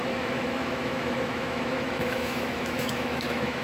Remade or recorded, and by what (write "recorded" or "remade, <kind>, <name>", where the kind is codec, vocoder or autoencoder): remade, autoencoder, DAC-VAE